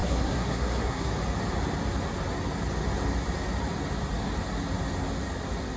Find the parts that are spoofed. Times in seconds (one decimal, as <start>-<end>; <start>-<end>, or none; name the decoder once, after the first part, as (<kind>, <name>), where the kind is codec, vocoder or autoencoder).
0.0-1.1 (codec, SNAC)